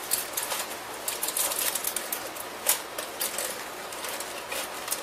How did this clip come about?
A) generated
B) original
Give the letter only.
B